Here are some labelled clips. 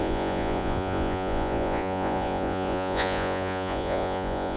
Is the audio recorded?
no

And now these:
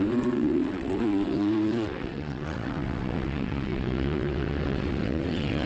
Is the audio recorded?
no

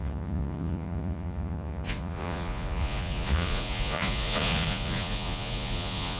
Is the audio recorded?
no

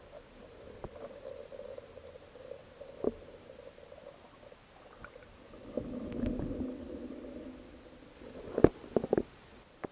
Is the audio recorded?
yes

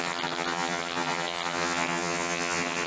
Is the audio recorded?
no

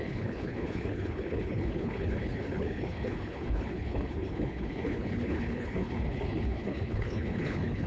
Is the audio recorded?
no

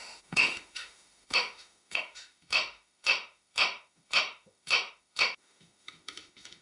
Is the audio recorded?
no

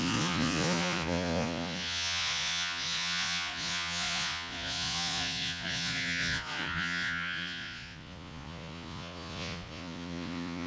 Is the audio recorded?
no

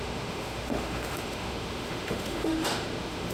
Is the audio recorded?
no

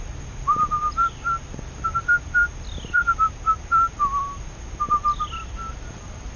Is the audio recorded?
no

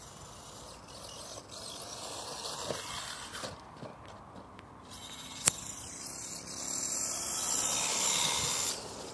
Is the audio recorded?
yes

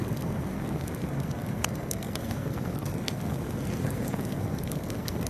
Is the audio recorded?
no